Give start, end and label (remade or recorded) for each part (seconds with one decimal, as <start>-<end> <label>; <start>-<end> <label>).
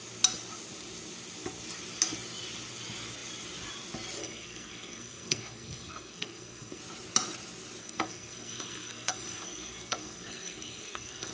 0.0-4.2 recorded; 4.2-6.8 remade; 6.8-7.8 recorded; 7.8-11.3 remade